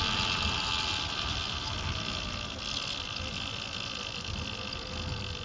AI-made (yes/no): no